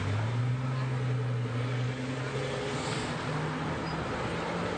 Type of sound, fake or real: real